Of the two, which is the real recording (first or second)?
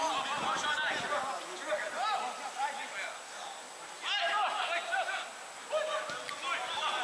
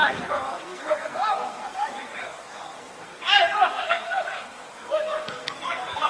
first